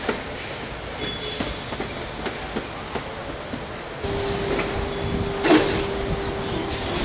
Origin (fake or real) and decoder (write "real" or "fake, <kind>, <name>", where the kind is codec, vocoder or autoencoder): real